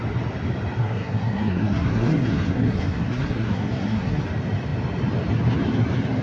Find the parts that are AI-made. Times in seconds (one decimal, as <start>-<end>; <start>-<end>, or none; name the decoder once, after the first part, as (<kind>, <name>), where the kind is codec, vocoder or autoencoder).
0.8-4.2 (codec, SNAC)